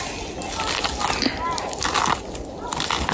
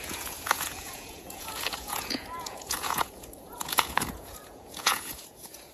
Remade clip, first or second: second